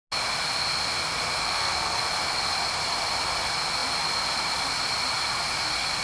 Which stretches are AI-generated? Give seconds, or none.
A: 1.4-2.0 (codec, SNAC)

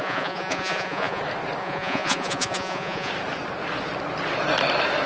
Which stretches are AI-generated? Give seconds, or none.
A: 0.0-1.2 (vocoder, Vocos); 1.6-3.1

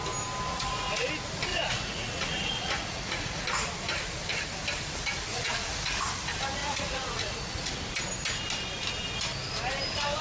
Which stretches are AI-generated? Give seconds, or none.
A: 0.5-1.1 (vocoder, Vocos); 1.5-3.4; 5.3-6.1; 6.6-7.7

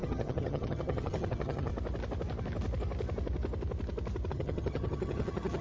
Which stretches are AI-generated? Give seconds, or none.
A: 0.0-1.7 (vocoder, HiFi-GAN); 4.3-5.6

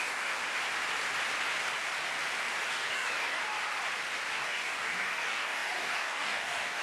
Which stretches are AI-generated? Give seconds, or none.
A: 0.0-0.4 (codec, DAC); 2.7-3.4; 4.3-6.8